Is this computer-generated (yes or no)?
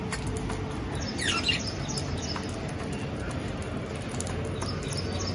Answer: no